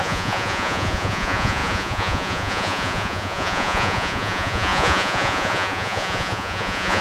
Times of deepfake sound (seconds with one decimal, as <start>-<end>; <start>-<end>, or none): 0.0-7.0